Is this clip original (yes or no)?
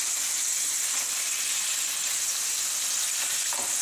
yes